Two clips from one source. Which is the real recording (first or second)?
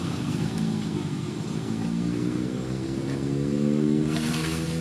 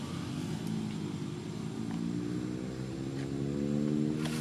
second